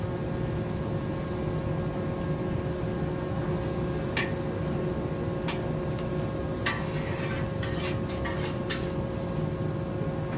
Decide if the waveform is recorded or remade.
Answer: recorded